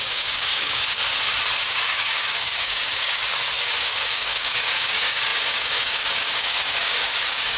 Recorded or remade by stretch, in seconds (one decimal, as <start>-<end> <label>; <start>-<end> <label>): 0.0-1.0 remade; 1.0-1.6 recorded; 1.6-3.2 remade; 3.2-3.8 recorded; 3.8-7.6 remade